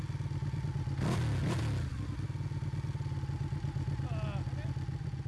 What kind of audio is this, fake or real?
real